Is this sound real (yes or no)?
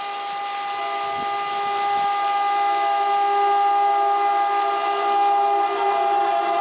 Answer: yes